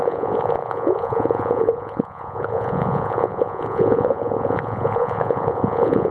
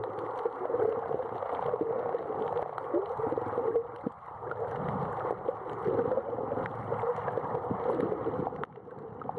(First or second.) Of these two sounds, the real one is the second